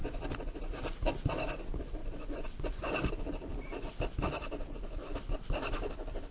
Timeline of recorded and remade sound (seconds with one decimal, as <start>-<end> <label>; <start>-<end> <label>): 0.0-2.0 recorded; 2.0-3.1 remade; 3.1-6.3 recorded